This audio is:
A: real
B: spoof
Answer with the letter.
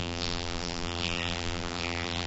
B